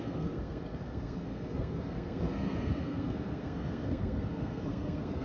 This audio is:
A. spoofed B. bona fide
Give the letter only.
A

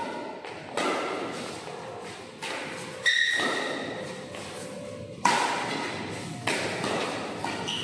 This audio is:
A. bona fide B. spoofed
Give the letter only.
A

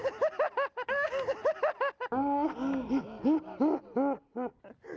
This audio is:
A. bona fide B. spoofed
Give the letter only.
A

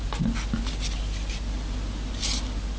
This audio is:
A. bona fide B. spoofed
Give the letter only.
A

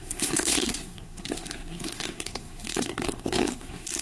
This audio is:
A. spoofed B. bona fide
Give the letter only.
A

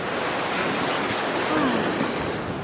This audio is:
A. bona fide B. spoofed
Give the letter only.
A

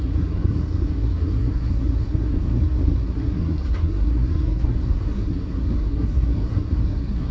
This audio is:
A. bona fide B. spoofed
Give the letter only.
B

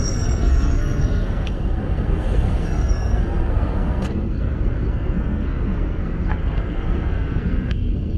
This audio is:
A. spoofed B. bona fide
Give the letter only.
A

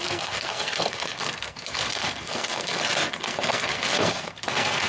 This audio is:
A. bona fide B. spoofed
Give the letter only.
B